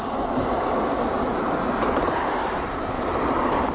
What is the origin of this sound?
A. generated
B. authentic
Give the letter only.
B